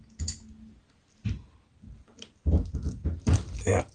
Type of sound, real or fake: real